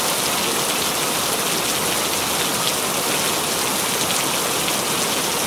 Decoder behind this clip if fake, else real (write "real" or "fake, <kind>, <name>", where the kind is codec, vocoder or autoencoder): real